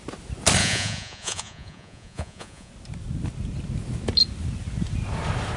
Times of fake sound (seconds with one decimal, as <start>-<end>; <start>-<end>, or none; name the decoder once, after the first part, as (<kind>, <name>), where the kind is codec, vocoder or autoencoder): 0.6-2.7 (vocoder, Vocos)